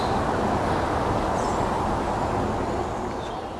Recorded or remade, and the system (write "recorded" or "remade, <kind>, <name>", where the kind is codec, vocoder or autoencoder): recorded